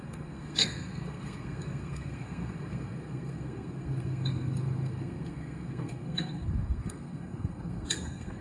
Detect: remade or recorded remade